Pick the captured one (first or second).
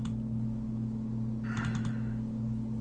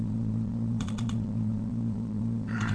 first